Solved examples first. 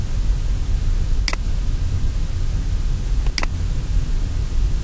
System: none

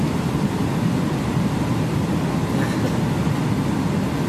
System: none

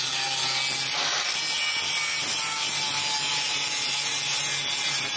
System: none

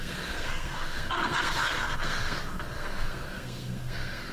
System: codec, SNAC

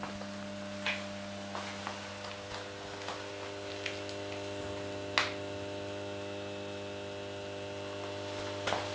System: none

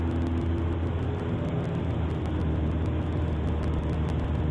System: none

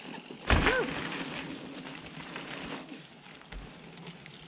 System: none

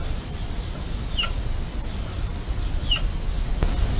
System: none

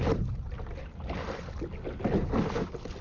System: none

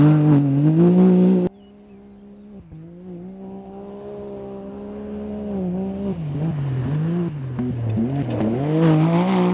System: none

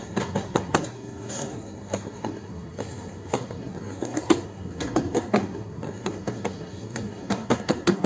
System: codec, SNAC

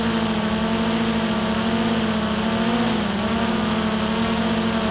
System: none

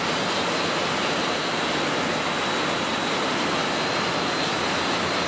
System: none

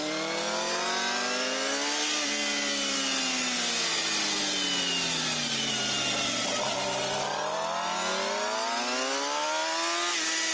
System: none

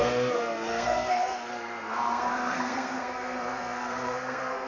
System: codec, SNAC